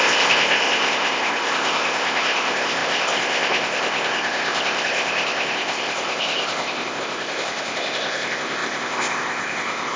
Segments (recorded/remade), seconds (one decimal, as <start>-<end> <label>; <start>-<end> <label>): 0.0-10.0 remade